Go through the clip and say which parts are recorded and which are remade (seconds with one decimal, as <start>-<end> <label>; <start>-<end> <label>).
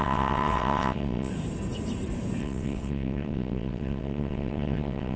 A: 0.0-1.3 remade; 1.3-2.4 recorded; 2.4-5.2 remade